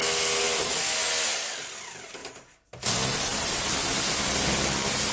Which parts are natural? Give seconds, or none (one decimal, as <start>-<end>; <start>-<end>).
0.0-3.3; 4.3-5.1